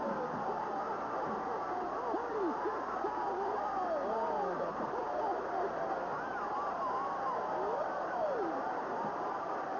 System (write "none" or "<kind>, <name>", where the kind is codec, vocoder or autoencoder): none